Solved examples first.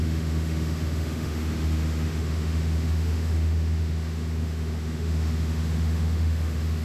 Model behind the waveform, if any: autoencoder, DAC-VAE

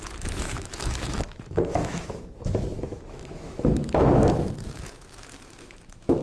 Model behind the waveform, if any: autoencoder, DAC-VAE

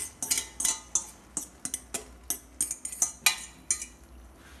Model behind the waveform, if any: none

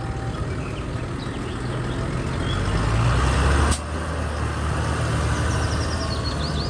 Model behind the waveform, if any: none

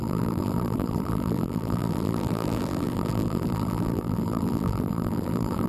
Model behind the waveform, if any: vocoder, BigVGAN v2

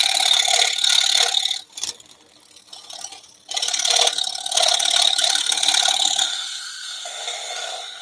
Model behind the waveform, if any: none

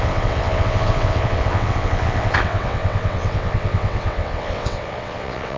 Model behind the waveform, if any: vocoder, WaveNeXt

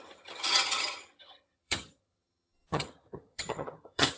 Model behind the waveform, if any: vocoder, HiFi-GAN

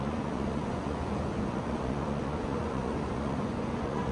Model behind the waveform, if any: vocoder, Vocos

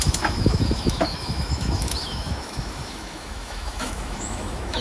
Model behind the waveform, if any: autoencoder, DAC-VAE